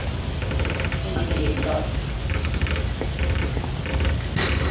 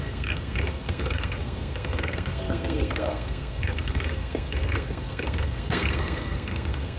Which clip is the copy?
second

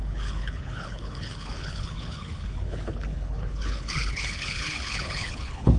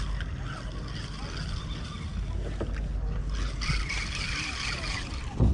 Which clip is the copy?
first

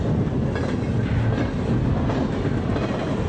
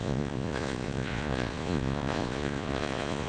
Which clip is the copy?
second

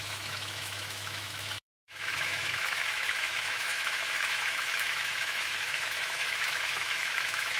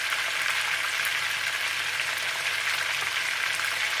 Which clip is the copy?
first